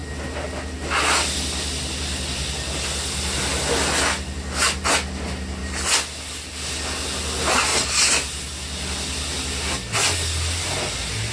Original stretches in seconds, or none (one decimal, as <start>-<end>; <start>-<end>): 0.0-11.3